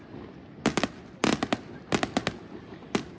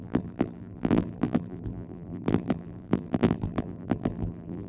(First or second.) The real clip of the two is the first